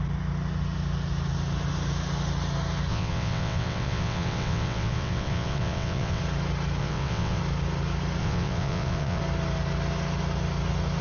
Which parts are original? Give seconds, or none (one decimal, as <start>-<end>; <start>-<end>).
0.0-2.9; 6.2-6.8; 7.4-8.2; 9.2-11.0